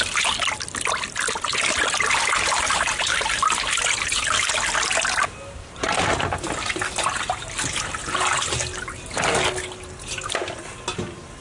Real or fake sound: real